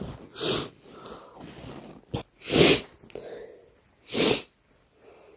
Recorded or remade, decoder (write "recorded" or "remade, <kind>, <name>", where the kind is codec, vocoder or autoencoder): recorded